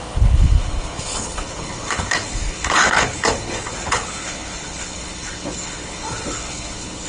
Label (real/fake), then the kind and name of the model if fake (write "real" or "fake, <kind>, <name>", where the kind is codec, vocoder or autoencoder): fake, codec, HILCodec